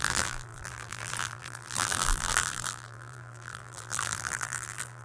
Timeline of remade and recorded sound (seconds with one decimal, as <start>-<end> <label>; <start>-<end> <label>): 0.0-5.0 remade